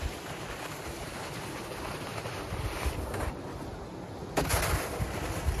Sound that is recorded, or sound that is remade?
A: recorded